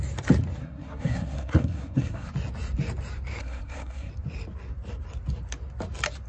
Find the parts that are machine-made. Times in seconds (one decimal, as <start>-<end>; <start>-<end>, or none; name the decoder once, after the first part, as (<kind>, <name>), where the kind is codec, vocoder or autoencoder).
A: 0.6-2.3 (codec, SNAC); 3.4-4.1